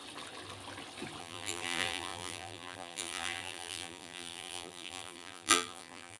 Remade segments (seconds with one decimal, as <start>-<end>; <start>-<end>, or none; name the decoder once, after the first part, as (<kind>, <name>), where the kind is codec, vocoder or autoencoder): 1.2-6.2 (vocoder, BigVGAN v2)